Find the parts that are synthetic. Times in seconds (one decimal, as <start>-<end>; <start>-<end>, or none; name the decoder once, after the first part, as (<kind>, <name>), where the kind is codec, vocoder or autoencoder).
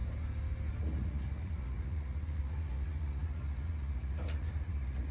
0.8-5.1 (vocoder, Vocos)